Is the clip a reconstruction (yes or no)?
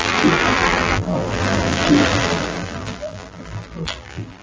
yes